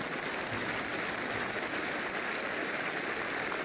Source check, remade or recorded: recorded